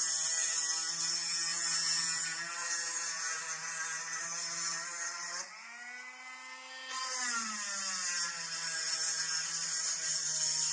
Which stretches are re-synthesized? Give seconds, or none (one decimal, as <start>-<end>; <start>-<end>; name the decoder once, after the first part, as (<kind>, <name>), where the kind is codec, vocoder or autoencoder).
1.5-2.2 (vocoder, Vocos); 2.6-3.4